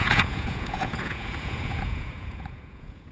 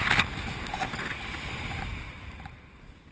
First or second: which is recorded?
second